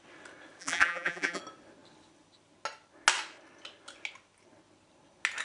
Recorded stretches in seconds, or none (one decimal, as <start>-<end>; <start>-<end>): 0.0-0.6; 1.4-5.4